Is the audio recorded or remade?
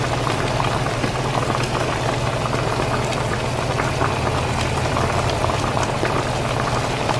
remade